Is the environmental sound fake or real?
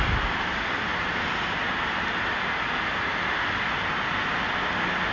real